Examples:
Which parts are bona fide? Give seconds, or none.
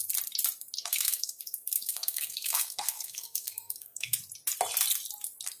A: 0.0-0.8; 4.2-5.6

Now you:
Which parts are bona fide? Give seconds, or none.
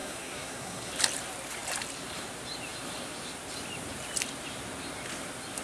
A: 0.9-5.6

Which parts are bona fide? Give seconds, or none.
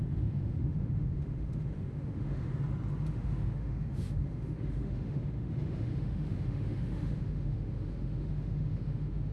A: 2.5-3.1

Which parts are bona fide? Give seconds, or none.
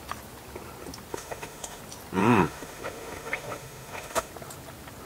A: 0.0-1.1; 1.8-2.2; 4.3-5.1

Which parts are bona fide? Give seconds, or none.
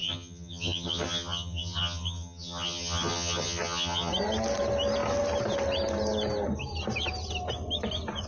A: 4.1-8.3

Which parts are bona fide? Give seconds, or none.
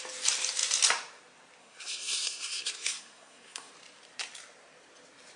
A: 0.0-1.6; 3.7-5.4